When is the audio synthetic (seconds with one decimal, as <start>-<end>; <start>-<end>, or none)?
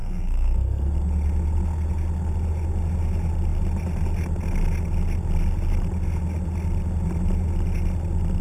0.0-0.9